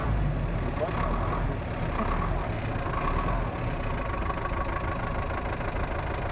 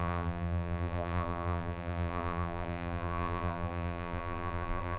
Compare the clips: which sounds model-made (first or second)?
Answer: second